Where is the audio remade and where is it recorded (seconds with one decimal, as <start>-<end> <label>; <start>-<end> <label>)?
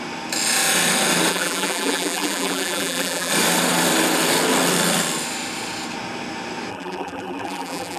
0.0-1.3 recorded; 1.3-3.3 remade; 3.3-6.7 recorded; 6.7-8.0 remade